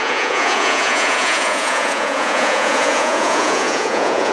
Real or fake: fake